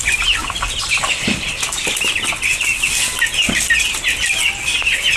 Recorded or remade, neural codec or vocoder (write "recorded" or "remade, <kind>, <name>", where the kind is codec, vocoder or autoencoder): recorded